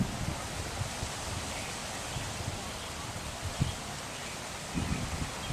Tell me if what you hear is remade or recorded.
recorded